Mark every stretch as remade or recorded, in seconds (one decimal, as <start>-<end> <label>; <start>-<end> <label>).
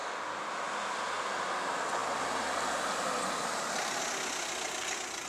0.0-5.3 recorded